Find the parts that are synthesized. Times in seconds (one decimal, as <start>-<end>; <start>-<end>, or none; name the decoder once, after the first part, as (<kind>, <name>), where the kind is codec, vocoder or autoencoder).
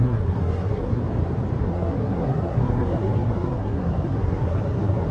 0.0-1.0 (codec, SNAC); 1.6-5.1